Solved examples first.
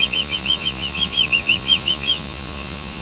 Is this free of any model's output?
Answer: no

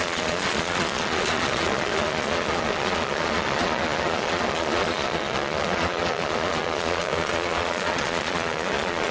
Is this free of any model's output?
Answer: no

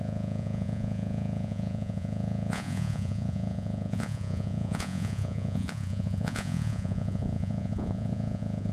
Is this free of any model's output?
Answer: no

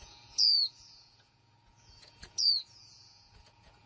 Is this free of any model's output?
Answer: no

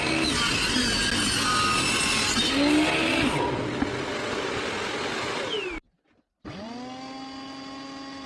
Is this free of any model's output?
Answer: yes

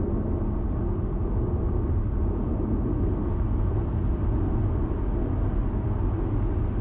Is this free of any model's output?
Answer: yes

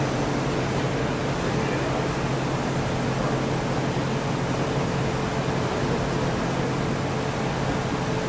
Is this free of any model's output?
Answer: yes